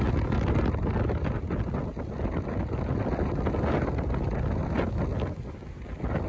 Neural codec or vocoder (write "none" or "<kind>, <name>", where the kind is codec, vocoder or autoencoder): none